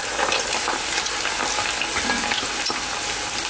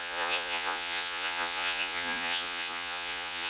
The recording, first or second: first